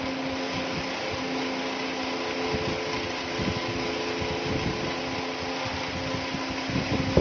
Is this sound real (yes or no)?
yes